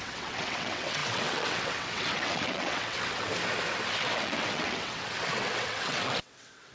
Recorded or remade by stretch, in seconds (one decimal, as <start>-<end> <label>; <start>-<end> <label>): 0.0-3.3 remade; 3.3-4.0 recorded; 4.0-6.7 remade